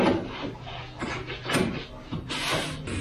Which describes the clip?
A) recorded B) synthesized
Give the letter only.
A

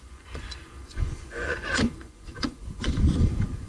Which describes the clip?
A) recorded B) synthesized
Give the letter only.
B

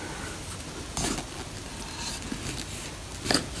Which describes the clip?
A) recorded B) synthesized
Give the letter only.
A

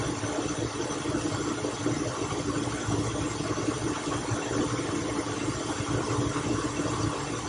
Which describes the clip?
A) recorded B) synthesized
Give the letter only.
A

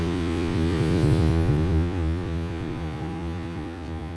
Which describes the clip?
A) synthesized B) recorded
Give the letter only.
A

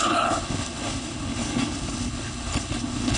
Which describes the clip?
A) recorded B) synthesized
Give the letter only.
B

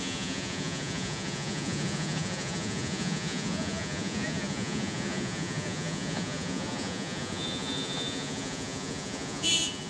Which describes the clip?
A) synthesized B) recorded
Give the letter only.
A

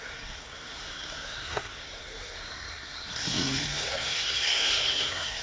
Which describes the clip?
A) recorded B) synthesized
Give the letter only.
B